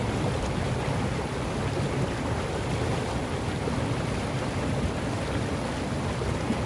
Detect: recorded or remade recorded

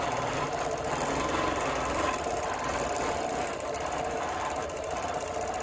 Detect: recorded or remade recorded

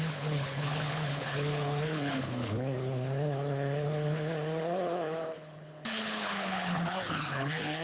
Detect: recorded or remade remade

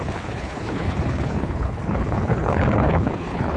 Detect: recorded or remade remade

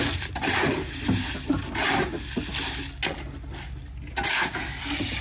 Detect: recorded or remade recorded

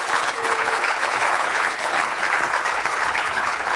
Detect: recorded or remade remade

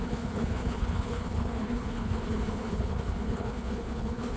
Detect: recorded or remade remade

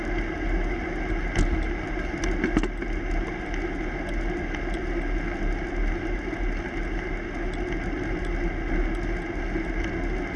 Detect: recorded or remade recorded